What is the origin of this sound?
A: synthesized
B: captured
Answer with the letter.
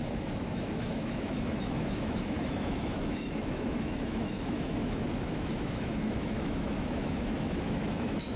A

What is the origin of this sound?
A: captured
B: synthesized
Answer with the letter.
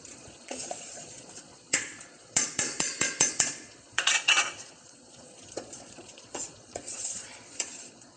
B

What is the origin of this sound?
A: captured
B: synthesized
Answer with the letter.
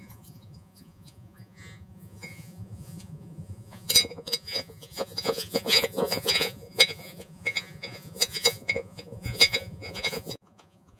B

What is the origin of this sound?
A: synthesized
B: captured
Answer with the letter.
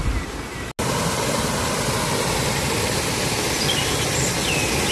B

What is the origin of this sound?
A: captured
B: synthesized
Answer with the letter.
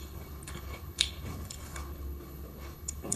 B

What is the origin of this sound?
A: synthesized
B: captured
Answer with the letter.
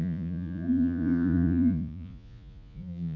A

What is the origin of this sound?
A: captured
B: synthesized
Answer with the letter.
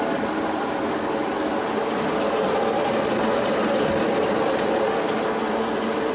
A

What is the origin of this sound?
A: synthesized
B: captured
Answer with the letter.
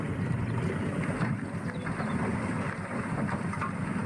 B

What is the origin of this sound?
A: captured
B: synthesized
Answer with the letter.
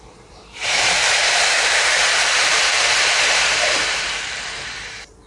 B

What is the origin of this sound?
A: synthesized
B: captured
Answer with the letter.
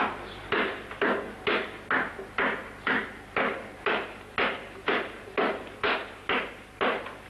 B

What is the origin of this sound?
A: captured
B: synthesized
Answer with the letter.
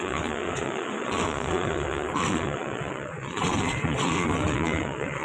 B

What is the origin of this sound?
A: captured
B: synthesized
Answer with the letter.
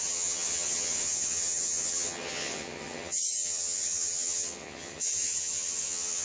B